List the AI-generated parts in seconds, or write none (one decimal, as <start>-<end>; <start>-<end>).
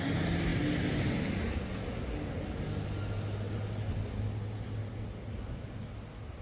none